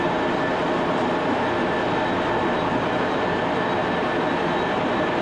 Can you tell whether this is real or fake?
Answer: real